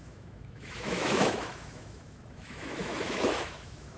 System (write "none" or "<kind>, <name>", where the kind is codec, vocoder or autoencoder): autoencoder, DAC-VAE